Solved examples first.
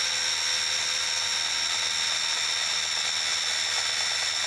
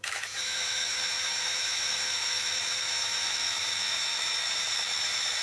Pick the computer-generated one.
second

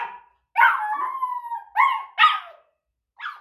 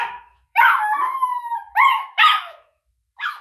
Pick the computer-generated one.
second